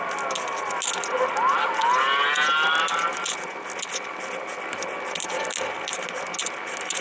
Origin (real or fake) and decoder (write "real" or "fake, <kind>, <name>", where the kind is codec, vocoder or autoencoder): real